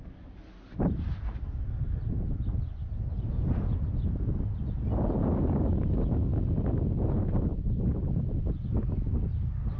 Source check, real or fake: real